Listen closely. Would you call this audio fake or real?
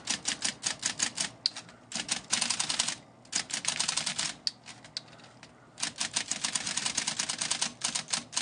real